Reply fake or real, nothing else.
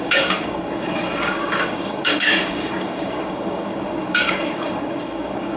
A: fake